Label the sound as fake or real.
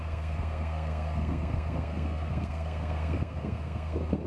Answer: fake